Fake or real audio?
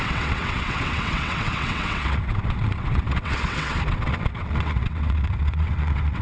fake